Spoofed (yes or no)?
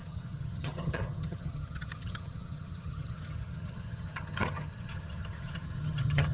yes